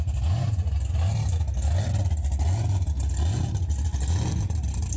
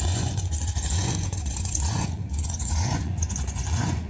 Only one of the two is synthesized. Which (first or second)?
second